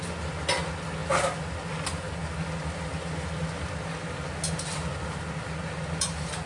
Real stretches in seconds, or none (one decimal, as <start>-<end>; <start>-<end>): 0.0-6.5